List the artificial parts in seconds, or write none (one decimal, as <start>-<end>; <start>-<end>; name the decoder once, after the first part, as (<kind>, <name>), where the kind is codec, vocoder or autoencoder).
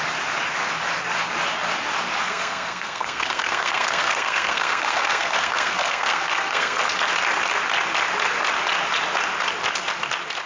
2.2-6.8 (codec, SNAC)